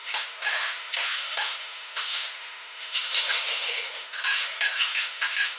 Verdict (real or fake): fake